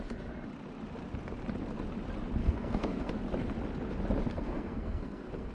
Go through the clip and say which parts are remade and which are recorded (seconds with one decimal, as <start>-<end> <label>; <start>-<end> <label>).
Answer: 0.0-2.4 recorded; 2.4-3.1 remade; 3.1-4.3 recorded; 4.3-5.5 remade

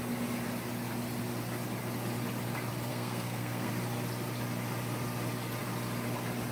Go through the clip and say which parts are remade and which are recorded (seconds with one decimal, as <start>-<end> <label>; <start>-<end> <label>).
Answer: 0.0-2.9 recorded; 2.9-3.7 remade; 3.7-6.5 recorded

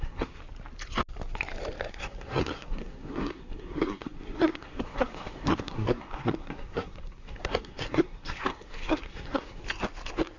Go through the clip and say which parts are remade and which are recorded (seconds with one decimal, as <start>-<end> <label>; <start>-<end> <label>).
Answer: 0.0-0.4 remade; 0.4-1.9 recorded; 1.9-9.6 remade; 9.6-10.4 recorded

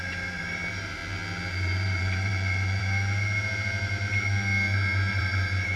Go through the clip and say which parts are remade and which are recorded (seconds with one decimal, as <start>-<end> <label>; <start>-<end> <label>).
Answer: 0.0-1.0 remade; 1.0-1.5 recorded; 1.5-2.8 remade; 2.8-5.1 recorded; 5.1-5.8 remade

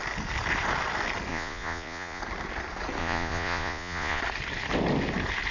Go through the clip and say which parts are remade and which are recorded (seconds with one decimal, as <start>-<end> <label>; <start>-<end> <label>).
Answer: 0.0-1.3 recorded; 1.3-2.2 remade; 2.2-3.0 recorded; 3.0-4.2 remade; 4.2-5.5 recorded

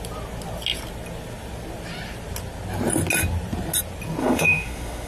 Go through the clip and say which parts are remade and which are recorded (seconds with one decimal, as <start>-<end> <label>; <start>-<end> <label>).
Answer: 0.0-4.2 recorded; 4.2-5.1 remade